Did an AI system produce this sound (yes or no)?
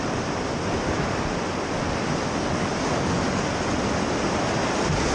no